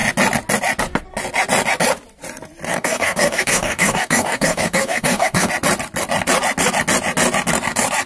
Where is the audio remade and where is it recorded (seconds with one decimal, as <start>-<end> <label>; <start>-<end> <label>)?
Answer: 0.0-2.7 recorded; 2.7-5.5 remade; 5.5-8.1 recorded